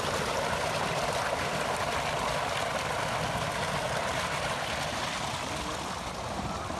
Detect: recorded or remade recorded